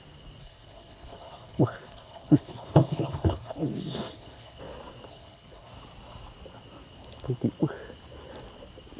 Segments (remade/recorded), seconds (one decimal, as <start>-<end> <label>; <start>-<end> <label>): 0.0-0.4 recorded; 0.4-4.6 remade; 4.6-5.1 recorded; 5.1-5.7 remade; 5.7-9.0 recorded